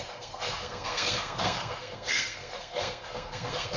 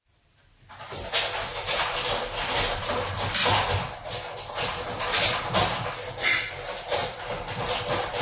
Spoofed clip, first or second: first